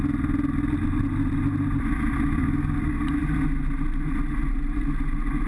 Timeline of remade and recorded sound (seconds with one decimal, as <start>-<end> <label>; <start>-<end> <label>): 0.0-5.5 recorded